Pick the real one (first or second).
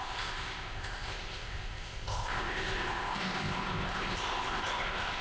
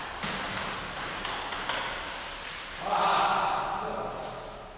second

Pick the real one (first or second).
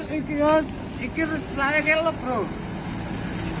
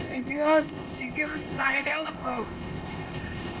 first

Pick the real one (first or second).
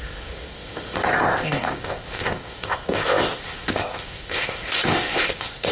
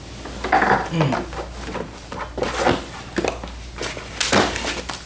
second